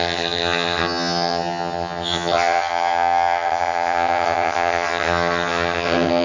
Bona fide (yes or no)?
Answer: no